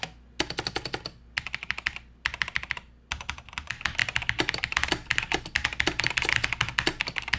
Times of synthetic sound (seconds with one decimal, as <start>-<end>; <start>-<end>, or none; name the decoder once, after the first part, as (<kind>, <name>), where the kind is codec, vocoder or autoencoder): 4.0-5.4 (vocoder, BigVGAN v2)